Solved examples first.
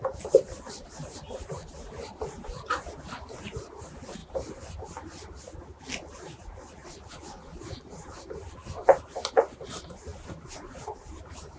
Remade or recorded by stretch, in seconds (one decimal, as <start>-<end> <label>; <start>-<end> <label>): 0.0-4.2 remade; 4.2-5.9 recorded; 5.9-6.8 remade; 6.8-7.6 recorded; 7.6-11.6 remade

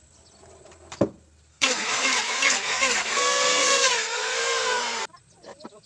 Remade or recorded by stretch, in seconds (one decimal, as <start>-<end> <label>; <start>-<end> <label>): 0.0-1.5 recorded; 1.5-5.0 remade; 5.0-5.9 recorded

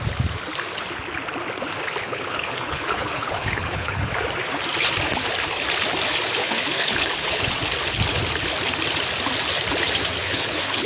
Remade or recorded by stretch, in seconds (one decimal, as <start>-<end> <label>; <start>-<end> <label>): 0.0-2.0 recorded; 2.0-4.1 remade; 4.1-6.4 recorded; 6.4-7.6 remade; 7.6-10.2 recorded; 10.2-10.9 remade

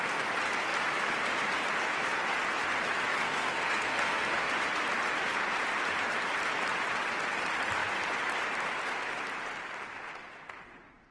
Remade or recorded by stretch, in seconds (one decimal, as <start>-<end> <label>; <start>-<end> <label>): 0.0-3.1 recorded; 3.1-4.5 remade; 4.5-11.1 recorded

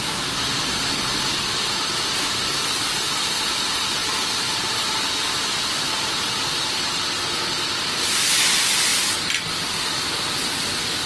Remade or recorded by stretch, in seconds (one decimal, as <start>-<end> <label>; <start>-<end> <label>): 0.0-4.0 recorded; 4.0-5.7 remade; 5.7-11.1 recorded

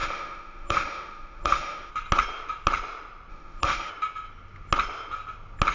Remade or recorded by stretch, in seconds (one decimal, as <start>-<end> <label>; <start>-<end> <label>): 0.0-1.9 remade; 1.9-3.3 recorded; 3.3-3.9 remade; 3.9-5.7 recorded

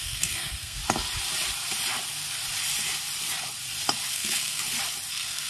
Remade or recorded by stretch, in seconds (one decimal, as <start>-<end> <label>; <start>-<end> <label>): 0.0-0.8 remade; 0.8-4.1 recorded; 4.1-4.6 remade; 4.6-5.1 recorded; 5.1-5.5 remade